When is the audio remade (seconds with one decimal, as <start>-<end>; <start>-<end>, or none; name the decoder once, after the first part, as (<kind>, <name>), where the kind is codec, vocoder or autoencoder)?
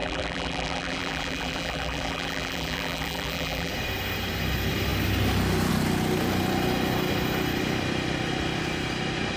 0.0-3.7 (vocoder, BigVGAN v2)